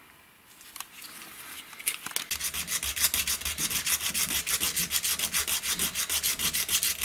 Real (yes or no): yes